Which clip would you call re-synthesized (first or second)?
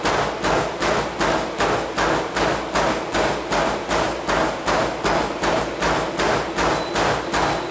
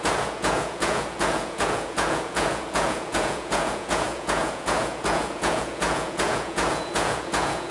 second